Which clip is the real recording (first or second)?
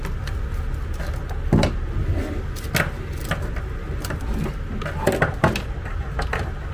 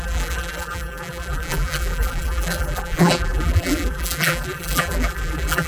first